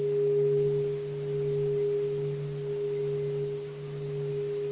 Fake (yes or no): no